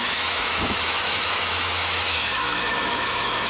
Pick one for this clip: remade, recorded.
remade